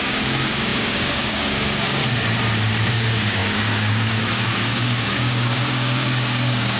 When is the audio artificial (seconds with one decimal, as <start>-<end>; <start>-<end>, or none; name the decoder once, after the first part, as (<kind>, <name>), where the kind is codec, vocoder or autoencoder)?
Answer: 0.0-2.0 (codec, DAC); 2.9-6.8